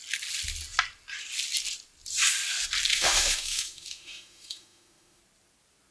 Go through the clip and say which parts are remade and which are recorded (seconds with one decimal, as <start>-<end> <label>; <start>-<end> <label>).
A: 0.0-2.9 recorded; 2.9-5.2 remade; 5.2-5.9 recorded